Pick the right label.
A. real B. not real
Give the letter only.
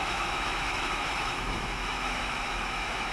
B